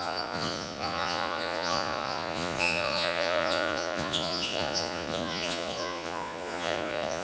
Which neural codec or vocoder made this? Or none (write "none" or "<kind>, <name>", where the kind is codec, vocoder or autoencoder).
vocoder, Vocos